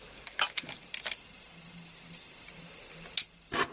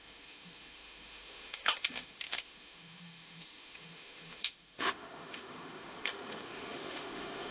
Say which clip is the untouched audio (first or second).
first